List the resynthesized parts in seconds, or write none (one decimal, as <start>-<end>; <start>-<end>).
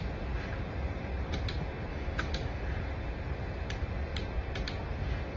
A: 1.9-2.6